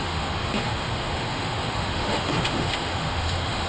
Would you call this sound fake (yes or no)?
yes